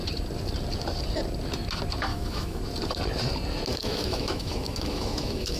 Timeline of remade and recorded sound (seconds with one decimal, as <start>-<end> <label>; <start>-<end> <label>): 0.0-2.1 recorded; 2.1-2.6 remade; 2.6-3.7 recorded; 3.7-5.6 remade